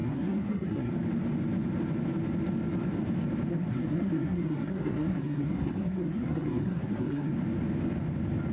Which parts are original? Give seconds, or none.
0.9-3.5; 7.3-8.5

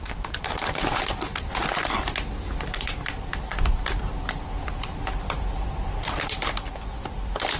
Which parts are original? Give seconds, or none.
0.0-7.6

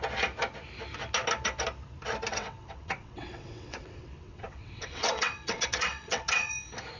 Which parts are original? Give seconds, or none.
0.0-2.3; 6.5-7.0

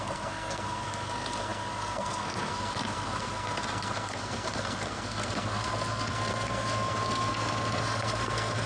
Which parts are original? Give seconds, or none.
none

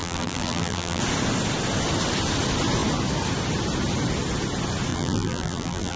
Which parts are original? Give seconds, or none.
1.0-4.9

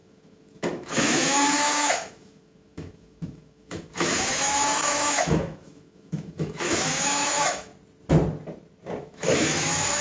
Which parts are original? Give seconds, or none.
7.7-9.0